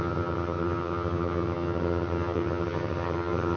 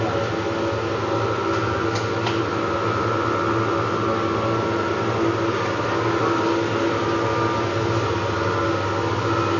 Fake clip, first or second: first